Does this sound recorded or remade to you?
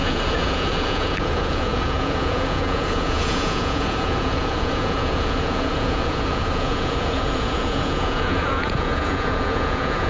remade